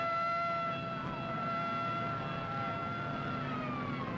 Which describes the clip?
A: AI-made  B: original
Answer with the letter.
B